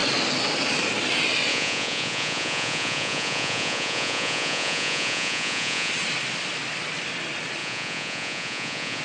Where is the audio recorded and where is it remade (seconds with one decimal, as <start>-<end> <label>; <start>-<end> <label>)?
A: 0.0-1.5 recorded; 1.5-5.9 remade; 5.9-7.6 recorded; 7.6-9.0 remade